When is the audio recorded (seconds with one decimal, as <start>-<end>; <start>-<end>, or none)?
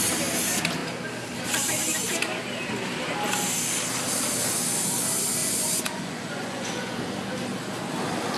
0.0-5.4; 7.0-8.4